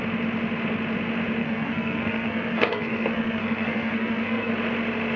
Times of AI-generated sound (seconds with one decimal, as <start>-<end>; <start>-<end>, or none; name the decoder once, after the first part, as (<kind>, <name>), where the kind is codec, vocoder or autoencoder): 1.4-4.5 (codec, SNAC)